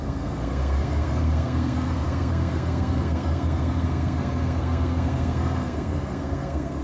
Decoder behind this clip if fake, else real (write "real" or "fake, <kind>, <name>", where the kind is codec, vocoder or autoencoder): fake, codec, SNAC